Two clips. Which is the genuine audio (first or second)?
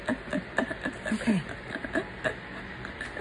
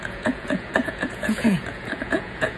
first